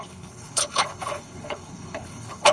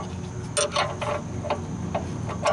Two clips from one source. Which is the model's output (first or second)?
first